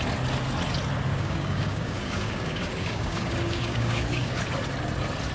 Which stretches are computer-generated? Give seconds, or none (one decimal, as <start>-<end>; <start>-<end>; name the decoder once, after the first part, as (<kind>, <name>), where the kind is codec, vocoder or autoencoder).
1.1-4.3 (codec, DAC)